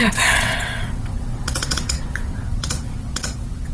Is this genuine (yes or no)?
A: no